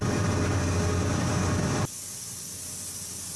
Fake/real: real